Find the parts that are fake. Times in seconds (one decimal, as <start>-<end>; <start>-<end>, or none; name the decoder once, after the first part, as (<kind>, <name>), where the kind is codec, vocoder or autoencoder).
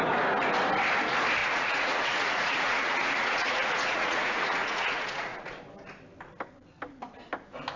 1.4-5.6 (vocoder, Vocos)